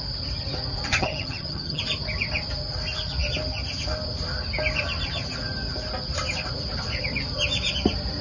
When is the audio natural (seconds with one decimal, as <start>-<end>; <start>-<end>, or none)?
0.0-0.9; 1.8-8.2